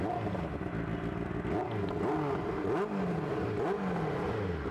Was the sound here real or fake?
real